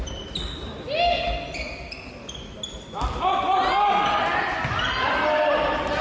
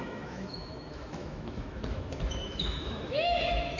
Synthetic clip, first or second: second